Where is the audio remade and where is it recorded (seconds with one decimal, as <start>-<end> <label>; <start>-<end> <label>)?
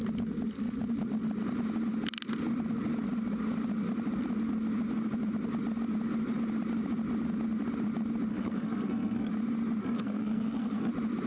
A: 0.0-8.3 recorded; 8.3-9.3 remade; 9.3-9.8 recorded; 9.8-10.9 remade; 10.9-11.3 recorded